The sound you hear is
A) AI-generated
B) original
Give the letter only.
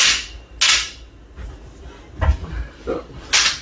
B